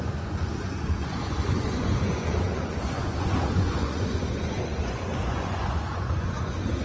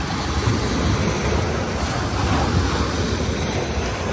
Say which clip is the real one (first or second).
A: second